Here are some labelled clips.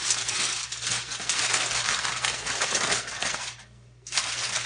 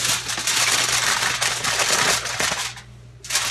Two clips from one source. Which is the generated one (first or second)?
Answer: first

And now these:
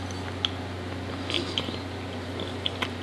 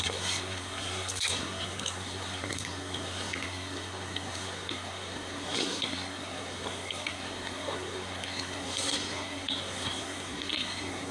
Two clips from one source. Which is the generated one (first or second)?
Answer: second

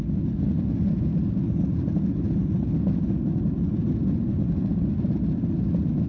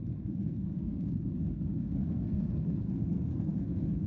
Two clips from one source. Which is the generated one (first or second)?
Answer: second